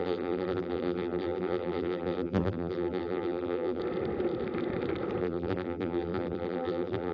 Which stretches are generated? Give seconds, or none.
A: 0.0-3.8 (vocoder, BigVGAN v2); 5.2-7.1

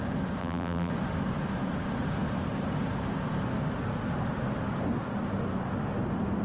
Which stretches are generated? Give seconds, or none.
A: 0.4-0.9 (vocoder, BigVGAN v2)

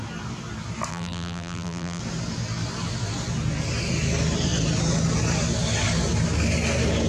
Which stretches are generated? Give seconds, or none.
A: 0.9-2.0 (vocoder, BigVGAN v2)

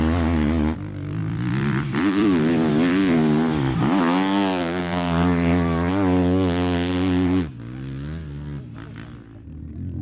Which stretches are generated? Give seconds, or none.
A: 1.2-2.7 (vocoder, BigVGAN v2); 4.8-5.9